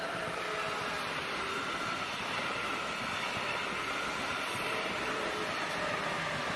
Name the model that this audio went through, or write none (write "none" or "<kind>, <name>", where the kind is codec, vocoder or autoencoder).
vocoder, BigVGAN v2